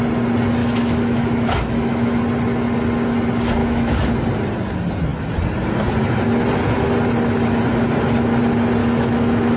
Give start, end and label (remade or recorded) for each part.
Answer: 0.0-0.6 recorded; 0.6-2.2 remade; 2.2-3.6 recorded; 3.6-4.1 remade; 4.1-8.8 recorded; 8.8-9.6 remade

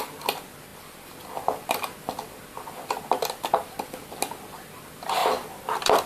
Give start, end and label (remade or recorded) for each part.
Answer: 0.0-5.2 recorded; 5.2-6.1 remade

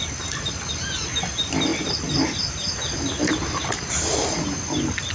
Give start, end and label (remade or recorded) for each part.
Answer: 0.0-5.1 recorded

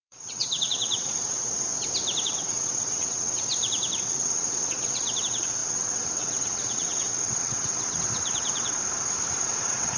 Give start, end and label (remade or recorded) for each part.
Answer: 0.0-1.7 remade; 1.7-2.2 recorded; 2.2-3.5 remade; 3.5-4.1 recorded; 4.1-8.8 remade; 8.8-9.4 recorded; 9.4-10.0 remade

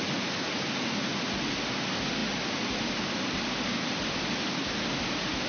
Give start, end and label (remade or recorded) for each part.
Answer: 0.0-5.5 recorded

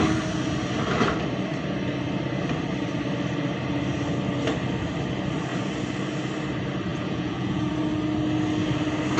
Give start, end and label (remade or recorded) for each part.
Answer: 0.0-6.9 recorded; 6.9-7.7 remade; 7.7-9.2 recorded

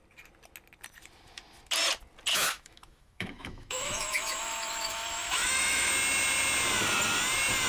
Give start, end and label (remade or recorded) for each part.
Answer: 0.0-2.3 recorded; 2.3-5.9 remade; 5.9-7.7 recorded